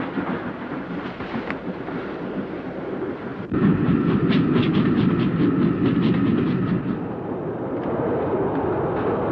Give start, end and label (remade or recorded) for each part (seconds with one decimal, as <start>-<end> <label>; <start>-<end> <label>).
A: 0.0-9.3 recorded